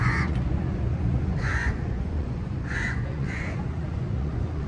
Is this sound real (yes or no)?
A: no